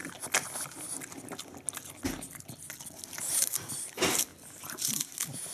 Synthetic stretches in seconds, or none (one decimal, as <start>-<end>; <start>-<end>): none